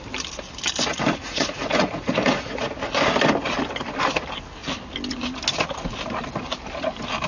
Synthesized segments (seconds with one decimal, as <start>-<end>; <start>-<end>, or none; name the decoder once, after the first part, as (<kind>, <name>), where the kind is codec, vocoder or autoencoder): 0.9-2.7 (vocoder, Vocos)